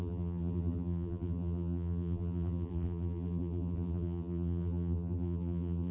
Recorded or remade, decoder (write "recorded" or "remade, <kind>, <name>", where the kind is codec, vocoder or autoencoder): remade, vocoder, BigVGAN v2